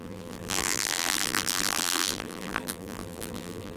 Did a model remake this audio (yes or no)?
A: yes